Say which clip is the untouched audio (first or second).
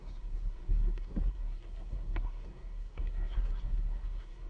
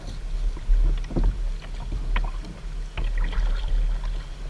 second